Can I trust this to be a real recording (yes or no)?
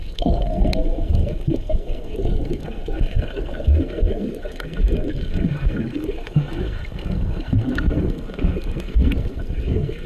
no